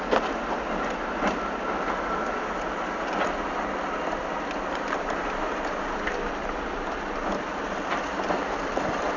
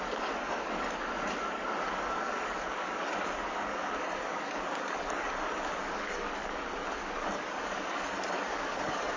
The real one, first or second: first